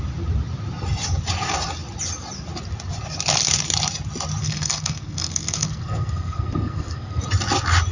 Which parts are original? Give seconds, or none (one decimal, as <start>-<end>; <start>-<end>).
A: 0.0-4.4; 7.2-7.9